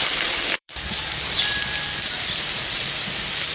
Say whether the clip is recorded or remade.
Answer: remade